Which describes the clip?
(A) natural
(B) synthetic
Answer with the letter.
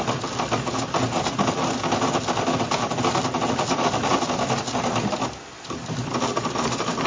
A